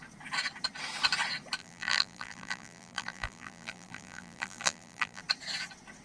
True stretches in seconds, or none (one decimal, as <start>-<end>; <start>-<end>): 0.0-1.6; 5.2-6.0